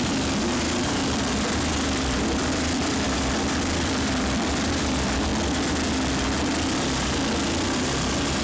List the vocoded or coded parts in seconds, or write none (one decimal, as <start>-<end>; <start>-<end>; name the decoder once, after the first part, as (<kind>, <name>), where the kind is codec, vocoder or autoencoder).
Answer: 0.0-5.3 (vocoder, BigVGAN v2)